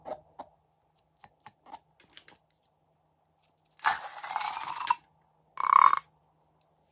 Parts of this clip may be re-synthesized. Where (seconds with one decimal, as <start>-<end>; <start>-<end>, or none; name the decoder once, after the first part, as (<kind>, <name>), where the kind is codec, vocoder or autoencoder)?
none